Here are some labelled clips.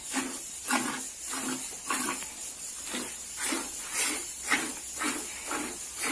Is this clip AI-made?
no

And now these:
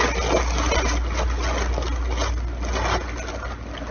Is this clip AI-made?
no